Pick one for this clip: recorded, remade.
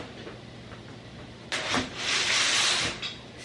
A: recorded